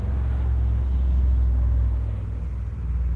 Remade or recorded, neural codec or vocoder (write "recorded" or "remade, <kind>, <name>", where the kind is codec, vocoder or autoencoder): recorded